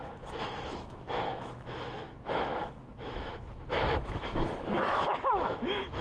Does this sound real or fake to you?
fake